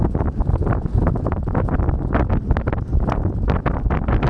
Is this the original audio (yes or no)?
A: yes